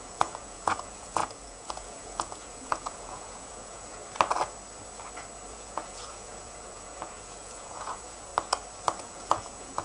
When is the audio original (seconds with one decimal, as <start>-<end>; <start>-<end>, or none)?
4.0-5.5; 8.3-9.0

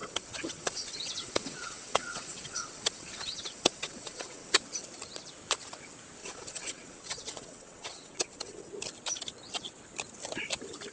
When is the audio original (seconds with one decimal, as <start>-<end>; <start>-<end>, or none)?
4.5-6.2; 8.7-10.9

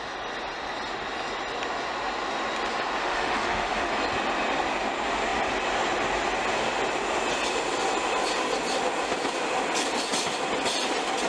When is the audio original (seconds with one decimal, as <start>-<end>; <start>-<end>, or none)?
0.0-3.0; 3.9-11.3

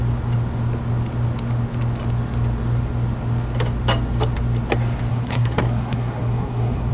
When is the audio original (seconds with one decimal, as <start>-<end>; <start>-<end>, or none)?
0.0-5.1

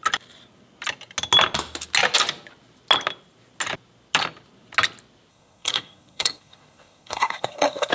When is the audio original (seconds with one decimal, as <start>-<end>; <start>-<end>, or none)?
0.0-5.3

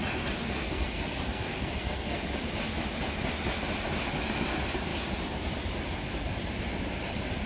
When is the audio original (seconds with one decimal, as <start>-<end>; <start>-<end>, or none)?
0.0-0.4; 2.3-7.5